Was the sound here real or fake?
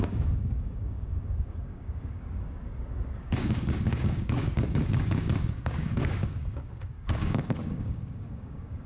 fake